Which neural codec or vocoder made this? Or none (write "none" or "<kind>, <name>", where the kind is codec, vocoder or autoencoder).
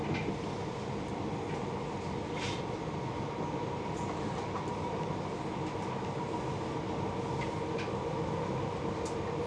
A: none